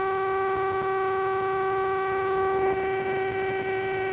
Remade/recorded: recorded